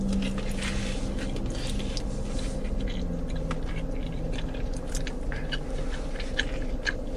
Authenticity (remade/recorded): recorded